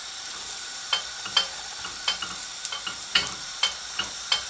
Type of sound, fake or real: fake